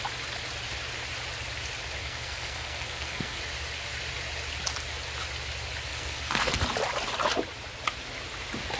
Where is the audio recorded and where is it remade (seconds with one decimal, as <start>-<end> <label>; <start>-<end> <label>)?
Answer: 0.0-2.0 recorded; 2.0-3.4 remade; 3.4-5.9 recorded; 5.9-6.5 remade; 6.5-8.8 recorded